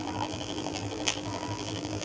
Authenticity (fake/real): fake